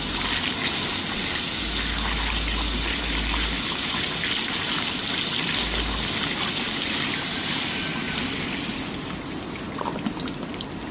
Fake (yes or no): no